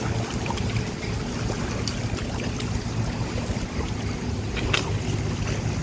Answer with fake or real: real